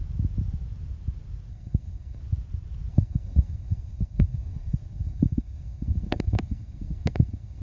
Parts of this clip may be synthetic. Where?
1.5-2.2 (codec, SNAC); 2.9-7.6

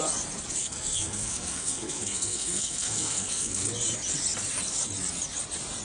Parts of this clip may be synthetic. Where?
0.6-3.7 (codec, SNAC)

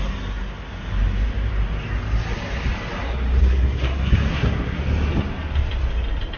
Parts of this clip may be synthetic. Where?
3.4-4.8 (codec, SNAC)

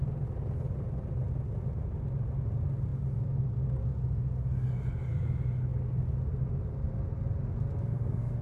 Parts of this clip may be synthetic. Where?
7.7-8.4 (codec, SNAC)

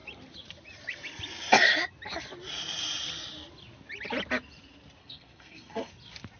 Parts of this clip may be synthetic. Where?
5.0-5.9 (codec, SNAC)

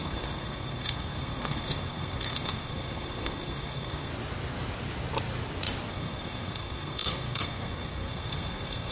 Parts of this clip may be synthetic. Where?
0.0-4.1 (codec, SNAC); 5.9-8.9

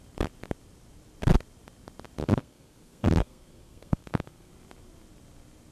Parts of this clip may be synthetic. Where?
2.2-4.5 (codec, SNAC)